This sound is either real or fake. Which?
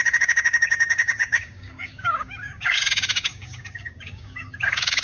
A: fake